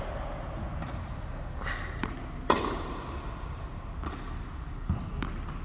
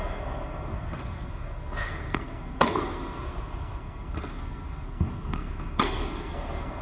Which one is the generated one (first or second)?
second